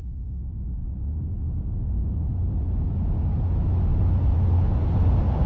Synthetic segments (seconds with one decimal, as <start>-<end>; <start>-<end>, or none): 0.8-2.5; 3.9-4.8